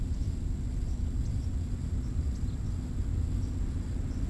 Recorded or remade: recorded